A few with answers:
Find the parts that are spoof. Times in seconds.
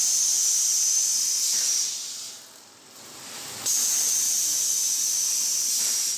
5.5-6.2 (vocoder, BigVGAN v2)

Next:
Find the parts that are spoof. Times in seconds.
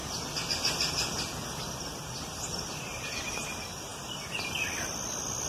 none